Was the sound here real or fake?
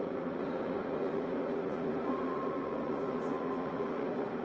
fake